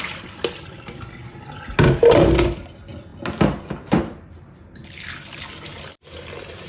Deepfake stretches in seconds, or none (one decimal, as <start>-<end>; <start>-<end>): none